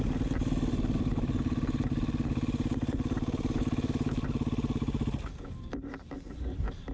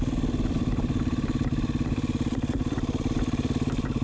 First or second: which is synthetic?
second